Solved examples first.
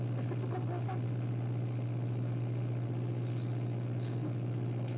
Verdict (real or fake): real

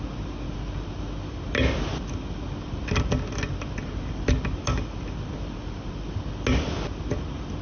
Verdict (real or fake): real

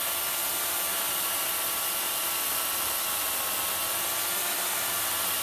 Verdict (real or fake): real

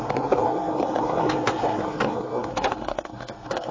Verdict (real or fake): fake